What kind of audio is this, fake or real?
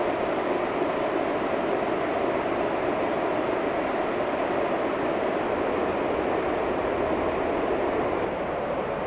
real